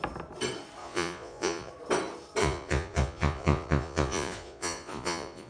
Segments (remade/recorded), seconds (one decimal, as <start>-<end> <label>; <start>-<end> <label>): 0.0-0.8 recorded; 0.8-1.7 remade; 1.7-2.4 recorded; 2.4-5.5 remade